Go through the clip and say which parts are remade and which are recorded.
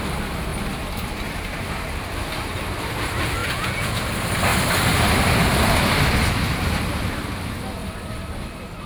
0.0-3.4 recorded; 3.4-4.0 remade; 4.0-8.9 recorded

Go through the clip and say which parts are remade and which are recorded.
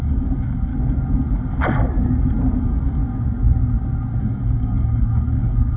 0.0-0.7 remade; 0.7-2.6 recorded; 2.6-3.0 remade; 3.0-4.2 recorded; 4.2-5.8 remade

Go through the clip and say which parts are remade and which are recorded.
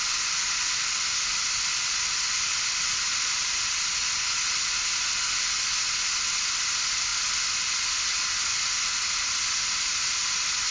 0.0-10.7 recorded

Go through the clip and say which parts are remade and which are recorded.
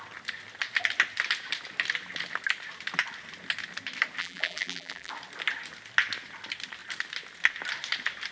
0.0-4.2 recorded; 4.2-5.1 remade; 5.1-8.3 recorded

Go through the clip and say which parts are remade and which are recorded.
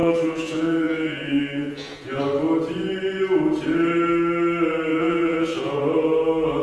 0.0-2.2 remade; 2.2-4.9 recorded; 4.9-5.8 remade; 5.8-6.6 recorded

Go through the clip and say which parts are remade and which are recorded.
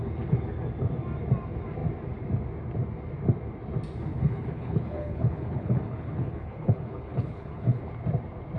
0.0-4.1 recorded; 4.1-7.8 remade; 7.8-8.6 recorded